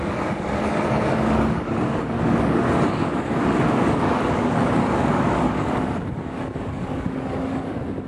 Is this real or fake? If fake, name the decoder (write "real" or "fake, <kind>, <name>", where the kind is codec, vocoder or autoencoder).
fake, codec, DAC